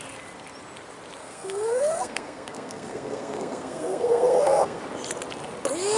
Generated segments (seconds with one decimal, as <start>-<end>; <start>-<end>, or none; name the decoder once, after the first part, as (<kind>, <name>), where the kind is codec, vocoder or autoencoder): 1.2-4.8 (codec, SNAC)

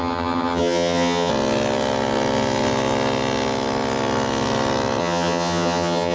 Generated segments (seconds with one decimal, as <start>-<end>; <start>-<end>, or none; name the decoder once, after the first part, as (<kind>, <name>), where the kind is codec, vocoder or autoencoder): 0.0-1.3 (vocoder, HiFi-GAN); 5.0-6.1

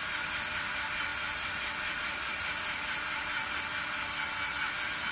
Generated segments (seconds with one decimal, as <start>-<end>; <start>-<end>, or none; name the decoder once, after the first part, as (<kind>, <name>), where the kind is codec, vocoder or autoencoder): none

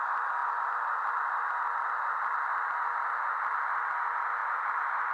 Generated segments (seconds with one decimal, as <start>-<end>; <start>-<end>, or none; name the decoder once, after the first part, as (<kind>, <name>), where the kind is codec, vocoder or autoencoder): 0.0-5.1 (vocoder, BigVGAN v2)

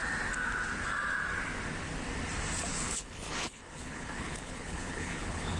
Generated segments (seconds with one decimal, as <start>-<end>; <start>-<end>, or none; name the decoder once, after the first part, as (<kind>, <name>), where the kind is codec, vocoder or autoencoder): 2.7-5.6 (codec, HILCodec)